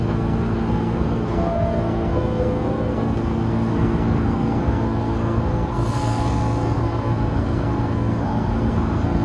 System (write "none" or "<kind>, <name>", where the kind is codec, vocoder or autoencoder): codec, SNAC